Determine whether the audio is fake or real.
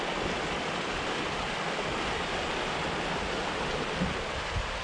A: real